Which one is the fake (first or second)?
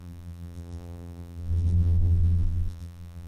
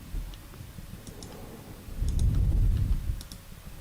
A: first